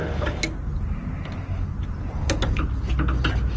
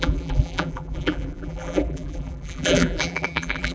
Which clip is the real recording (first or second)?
first